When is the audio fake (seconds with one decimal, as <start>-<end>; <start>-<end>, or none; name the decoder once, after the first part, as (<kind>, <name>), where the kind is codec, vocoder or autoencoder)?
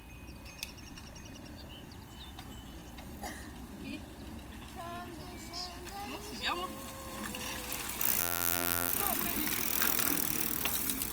8.2-8.9 (vocoder, BigVGAN v2)